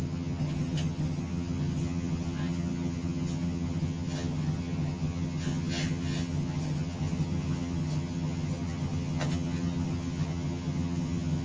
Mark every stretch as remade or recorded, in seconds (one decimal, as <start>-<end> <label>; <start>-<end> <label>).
0.0-11.4 remade